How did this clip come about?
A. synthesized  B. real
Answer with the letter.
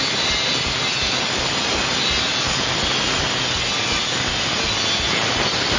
B